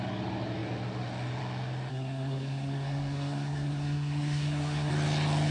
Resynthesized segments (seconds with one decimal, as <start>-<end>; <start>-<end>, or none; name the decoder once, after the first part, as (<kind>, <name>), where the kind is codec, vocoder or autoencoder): 1.9-4.9 (codec, SNAC)